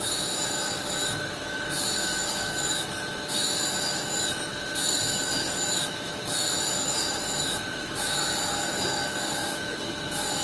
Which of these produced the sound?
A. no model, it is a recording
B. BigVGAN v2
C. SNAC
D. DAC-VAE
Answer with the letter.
D